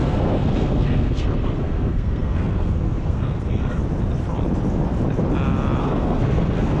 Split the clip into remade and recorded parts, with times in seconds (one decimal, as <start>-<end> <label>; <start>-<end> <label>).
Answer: 0.0-3.8 remade; 3.8-5.8 recorded; 5.8-6.8 remade